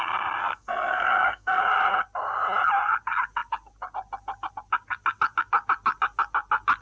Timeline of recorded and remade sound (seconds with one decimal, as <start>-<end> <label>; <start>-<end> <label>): 0.0-0.4 recorded; 0.4-1.6 remade; 1.6-6.8 recorded